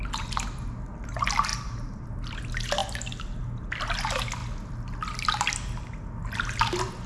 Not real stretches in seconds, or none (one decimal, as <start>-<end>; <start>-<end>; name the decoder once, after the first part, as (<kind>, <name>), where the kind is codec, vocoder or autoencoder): 1.5-2.1 (vocoder, BigVGAN v2)